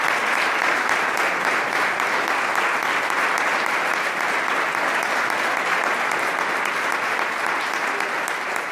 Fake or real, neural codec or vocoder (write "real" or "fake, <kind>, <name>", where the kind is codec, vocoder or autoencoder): real